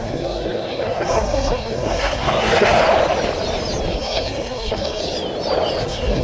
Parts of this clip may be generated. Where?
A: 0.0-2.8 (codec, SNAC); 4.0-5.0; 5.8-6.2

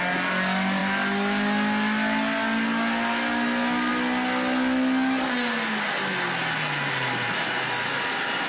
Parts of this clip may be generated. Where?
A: none

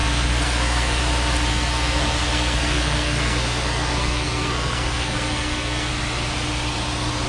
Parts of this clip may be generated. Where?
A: 0.0-1.0 (codec, SNAC); 1.5-5.9

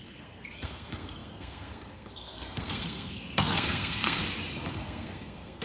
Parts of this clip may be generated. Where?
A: 0.0-4.2 (codec, SNAC); 4.7-5.6